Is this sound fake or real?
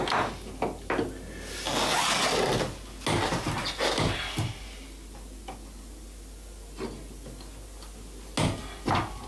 real